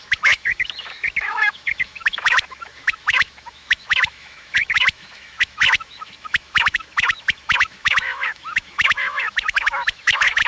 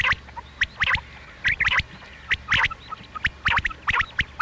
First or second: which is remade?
first